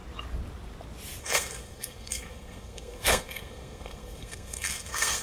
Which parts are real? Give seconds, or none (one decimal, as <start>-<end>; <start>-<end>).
0.0-1.2